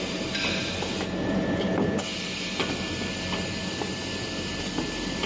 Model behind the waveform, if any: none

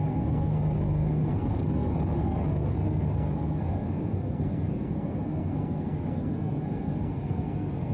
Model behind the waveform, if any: codec, SNAC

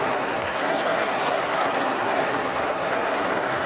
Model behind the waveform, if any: codec, SNAC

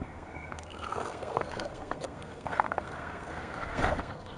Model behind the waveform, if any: codec, SNAC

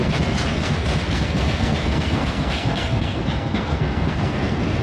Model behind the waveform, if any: codec, SNAC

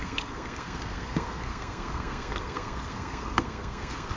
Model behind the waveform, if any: codec, SNAC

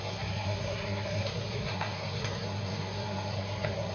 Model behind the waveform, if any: codec, SNAC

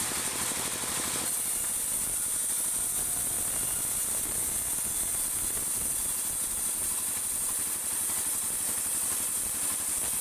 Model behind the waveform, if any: none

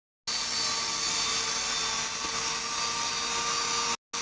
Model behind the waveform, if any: none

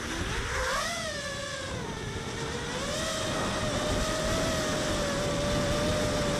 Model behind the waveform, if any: none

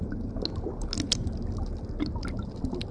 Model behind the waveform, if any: none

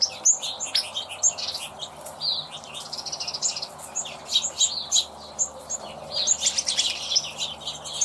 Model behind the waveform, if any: none